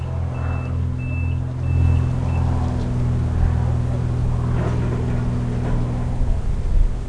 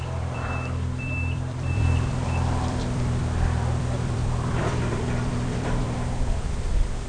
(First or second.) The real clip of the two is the first